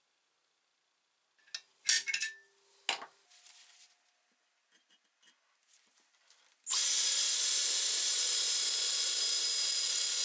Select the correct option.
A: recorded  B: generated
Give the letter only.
A